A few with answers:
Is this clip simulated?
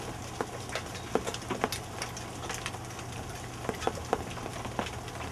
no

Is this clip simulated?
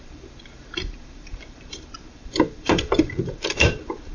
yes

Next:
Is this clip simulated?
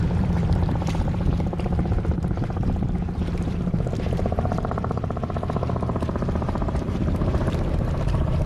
yes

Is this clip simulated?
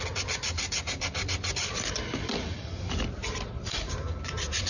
no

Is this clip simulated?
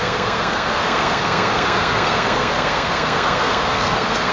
yes